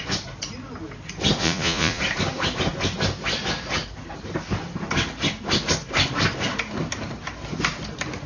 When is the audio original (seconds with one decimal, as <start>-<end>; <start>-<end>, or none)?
0.0-1.4; 2.0-8.3